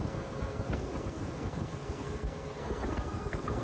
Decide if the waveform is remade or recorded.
remade